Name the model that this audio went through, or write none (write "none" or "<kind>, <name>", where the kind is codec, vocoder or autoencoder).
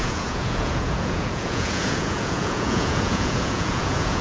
vocoder, Vocos